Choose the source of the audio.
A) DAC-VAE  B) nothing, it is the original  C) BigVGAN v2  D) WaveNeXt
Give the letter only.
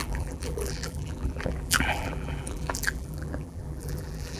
C